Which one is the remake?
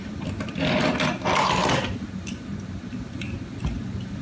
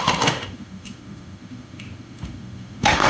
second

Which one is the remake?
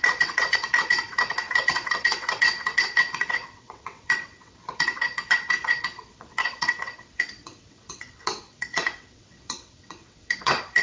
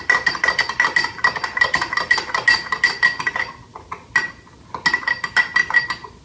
first